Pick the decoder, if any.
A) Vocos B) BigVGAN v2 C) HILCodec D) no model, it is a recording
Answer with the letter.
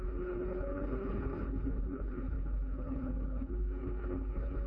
C